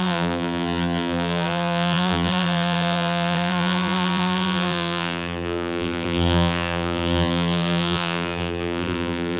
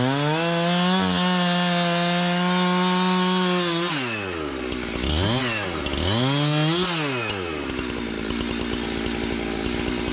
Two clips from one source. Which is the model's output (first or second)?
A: first